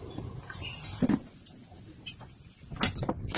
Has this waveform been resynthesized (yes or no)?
no